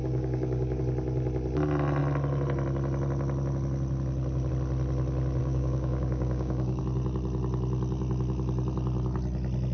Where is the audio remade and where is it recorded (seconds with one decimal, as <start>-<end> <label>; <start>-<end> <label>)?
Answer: 0.0-0.8 remade; 0.8-5.4 recorded; 5.4-6.8 remade; 6.8-9.7 recorded